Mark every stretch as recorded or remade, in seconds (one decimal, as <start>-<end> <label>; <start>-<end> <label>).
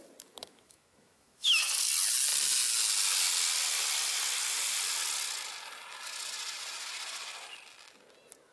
0.0-0.4 recorded; 0.4-1.6 remade; 1.6-8.5 recorded